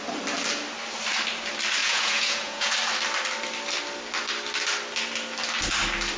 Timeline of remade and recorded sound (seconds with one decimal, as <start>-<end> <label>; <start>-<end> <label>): 0.0-1.8 recorded; 1.8-2.7 remade; 2.7-6.2 recorded